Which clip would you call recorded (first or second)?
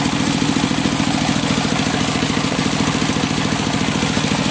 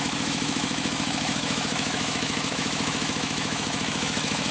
first